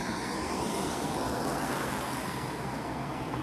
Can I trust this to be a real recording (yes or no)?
no